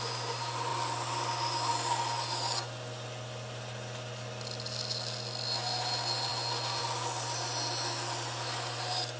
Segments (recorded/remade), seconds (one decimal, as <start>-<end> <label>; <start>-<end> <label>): 0.0-9.2 recorded